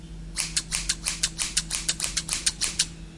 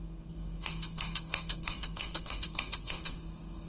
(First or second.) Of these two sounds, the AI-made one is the second